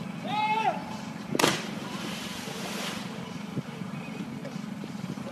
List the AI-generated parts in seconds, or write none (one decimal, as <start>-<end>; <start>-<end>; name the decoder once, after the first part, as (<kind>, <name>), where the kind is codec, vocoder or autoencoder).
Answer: 0.8-4.0 (vocoder, BigVGAN v2); 4.4-5.3